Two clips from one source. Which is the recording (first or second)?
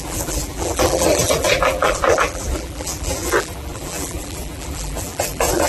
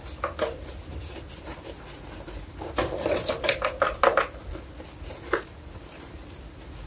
second